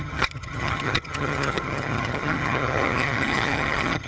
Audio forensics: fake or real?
fake